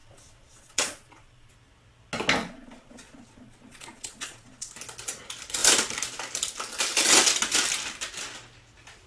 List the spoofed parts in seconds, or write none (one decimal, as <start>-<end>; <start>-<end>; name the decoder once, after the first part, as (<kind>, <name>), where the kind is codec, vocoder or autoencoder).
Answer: 0.0-1.5 (vocoder, Vocos); 2.4-4.7